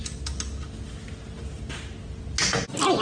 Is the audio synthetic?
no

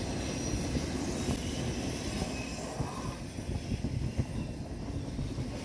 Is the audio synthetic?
no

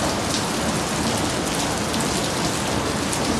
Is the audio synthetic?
no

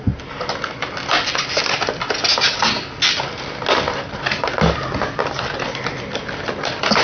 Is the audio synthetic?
no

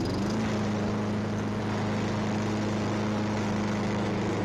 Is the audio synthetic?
no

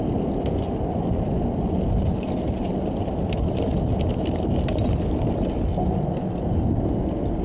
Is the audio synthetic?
no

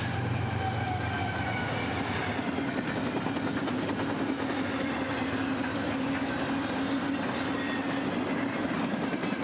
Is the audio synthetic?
no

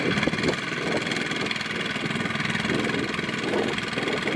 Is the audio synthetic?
no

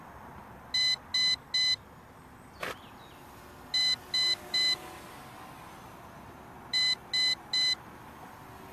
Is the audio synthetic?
no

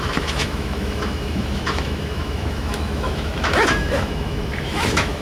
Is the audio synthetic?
yes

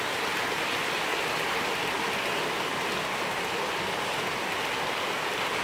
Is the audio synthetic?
no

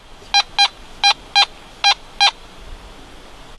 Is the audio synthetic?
no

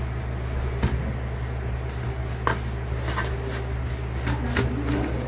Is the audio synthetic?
no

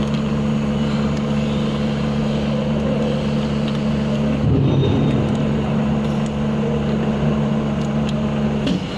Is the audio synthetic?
no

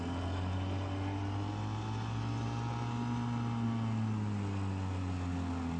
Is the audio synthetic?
no